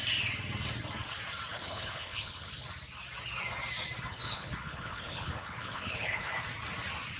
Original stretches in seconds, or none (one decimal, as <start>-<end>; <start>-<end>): 0.0-1.5; 2.5-4.1; 6.3-7.2